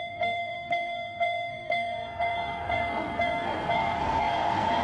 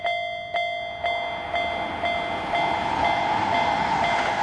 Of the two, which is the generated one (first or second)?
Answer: first